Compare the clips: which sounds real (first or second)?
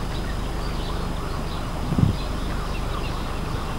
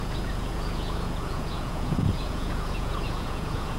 first